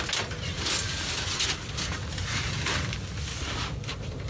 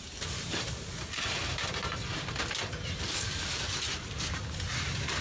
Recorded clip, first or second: first